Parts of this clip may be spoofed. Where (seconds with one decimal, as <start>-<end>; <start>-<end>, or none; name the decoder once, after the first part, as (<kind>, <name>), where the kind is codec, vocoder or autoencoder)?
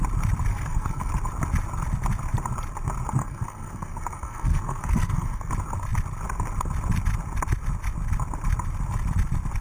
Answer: 0.5-1.1 (codec, SNAC); 3.2-5.5